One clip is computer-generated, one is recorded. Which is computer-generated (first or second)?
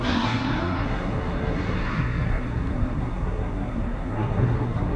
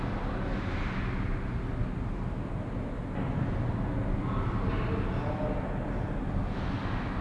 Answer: first